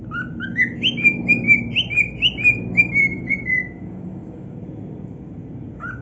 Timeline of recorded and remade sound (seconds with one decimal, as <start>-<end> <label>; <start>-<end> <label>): 0.0-3.1 recorded; 3.1-6.0 remade